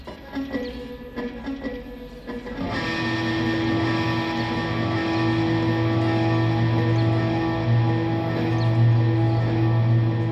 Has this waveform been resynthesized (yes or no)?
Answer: no